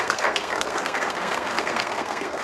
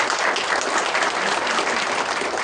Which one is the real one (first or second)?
second